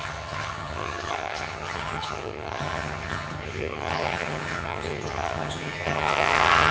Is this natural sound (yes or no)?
no